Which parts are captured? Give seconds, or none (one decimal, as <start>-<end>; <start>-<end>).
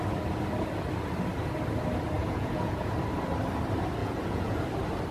0.0-2.2; 2.9-4.0; 4.6-5.1